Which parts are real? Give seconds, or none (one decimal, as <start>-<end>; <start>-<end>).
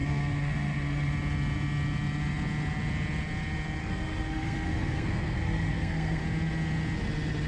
1.1-3.8; 6.2-7.5